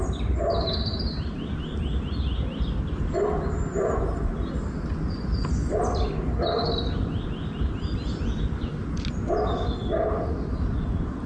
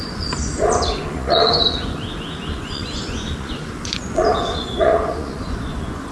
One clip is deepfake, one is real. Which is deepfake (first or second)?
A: second